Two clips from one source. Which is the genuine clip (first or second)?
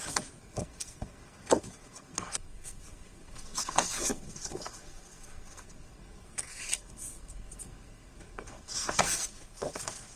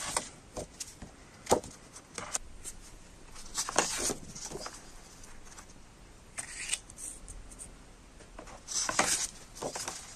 second